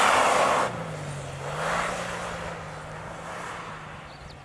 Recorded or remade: recorded